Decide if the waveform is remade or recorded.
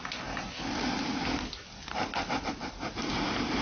recorded